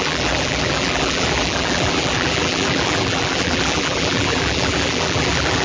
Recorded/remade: remade